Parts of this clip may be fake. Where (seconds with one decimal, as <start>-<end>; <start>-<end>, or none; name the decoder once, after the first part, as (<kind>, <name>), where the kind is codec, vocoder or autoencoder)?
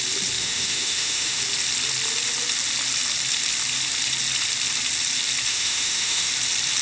0.4-1.4 (autoencoder, DAC-VAE); 5.5-6.3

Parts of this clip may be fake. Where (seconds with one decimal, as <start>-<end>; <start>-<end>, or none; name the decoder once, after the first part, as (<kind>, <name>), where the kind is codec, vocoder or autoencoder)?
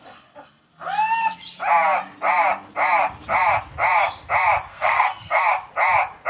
4.7-5.4 (codec, SNAC)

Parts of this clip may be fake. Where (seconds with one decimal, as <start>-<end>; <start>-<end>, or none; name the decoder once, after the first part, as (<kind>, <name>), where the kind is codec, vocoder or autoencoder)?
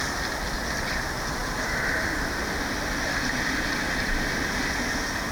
1.4-4.6 (vocoder, BigVGAN v2)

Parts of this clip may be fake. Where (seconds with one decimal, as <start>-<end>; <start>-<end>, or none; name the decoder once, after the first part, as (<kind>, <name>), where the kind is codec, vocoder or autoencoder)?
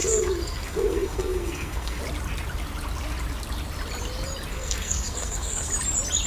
0.0-2.0 (codec, SNAC); 4.5-5.7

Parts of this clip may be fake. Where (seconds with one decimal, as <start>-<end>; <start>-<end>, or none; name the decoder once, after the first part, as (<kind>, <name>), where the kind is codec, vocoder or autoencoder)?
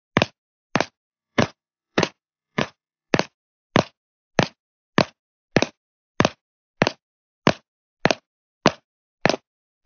1.1-3.1 (vocoder, Vocos)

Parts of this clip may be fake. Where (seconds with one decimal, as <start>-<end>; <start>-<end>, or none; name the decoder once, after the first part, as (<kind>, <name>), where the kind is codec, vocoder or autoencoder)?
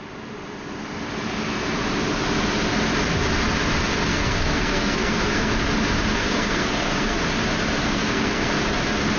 4.1-5.5 (codec, SNAC); 6.2-7.2; 7.8-8.5